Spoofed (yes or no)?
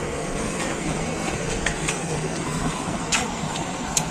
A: yes